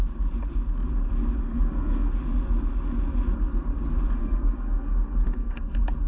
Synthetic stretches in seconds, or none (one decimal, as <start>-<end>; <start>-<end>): 1.4-2.1; 4.2-5.6